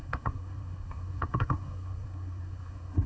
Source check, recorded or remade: remade